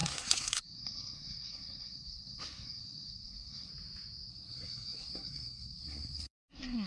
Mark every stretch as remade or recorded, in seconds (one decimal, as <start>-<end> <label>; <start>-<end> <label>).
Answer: 0.0-3.7 remade; 3.7-4.3 recorded; 4.3-6.9 remade